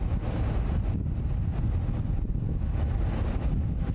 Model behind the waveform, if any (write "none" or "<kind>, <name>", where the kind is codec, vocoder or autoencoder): none